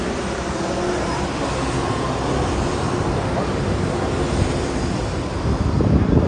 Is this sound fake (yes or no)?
no